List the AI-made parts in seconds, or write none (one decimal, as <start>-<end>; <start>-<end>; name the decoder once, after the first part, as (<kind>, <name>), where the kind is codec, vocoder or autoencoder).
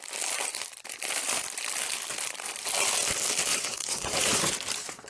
3.5-4.5 (vocoder, Vocos)